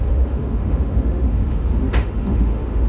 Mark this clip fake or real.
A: fake